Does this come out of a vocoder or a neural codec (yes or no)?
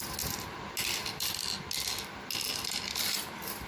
no